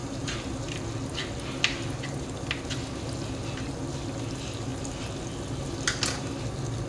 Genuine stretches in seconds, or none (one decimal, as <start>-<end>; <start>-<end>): 0.8-6.9